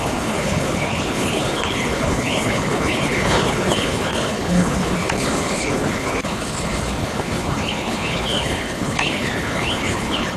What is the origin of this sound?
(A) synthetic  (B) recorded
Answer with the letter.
A